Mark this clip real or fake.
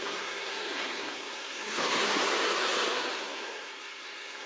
fake